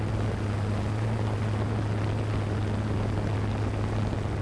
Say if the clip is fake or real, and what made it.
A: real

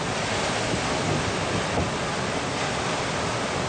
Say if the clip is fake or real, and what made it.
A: real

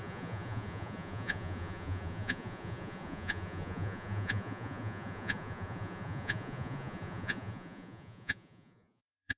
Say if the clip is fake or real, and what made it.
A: fake, vocoder, Vocos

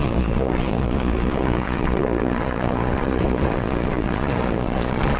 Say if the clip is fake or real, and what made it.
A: fake, vocoder, Vocos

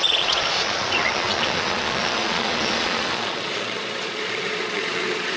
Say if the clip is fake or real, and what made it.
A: fake, vocoder, Vocos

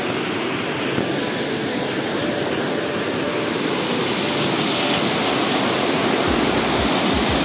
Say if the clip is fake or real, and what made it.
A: real